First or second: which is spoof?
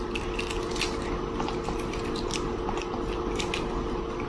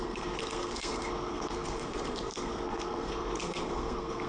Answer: second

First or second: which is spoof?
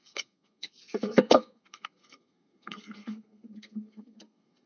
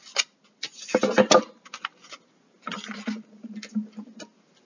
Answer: first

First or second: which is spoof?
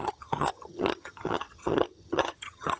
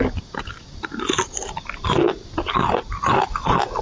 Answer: first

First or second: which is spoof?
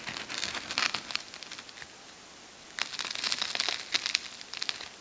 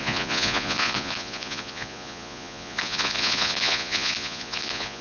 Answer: second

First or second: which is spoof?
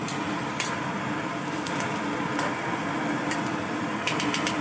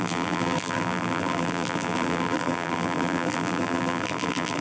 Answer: second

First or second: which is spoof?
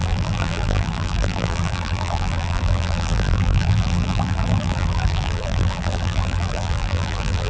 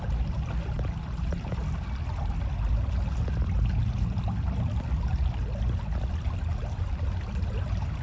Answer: first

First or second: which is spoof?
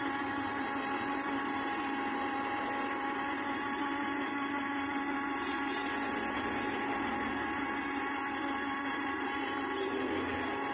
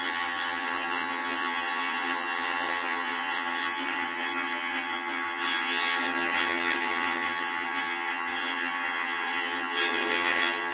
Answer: second